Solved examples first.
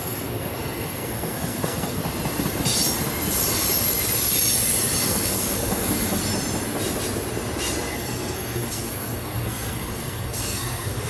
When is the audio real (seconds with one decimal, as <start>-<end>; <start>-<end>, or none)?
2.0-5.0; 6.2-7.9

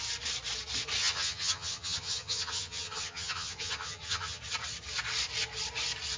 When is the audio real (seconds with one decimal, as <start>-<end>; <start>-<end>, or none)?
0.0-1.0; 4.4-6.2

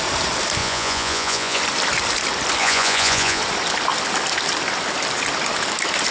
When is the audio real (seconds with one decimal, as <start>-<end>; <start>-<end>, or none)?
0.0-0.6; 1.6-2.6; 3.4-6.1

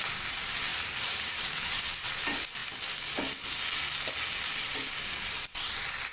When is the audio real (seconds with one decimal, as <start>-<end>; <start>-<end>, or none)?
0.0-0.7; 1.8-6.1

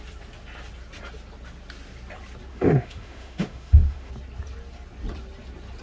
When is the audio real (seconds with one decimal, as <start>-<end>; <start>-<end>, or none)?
0.0-2.5; 4.1-5.8

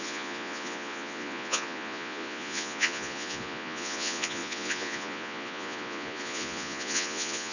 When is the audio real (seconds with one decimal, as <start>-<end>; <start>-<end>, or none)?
none

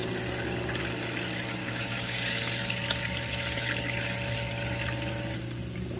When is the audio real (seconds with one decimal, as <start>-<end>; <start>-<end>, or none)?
0.0-1.6; 2.4-6.0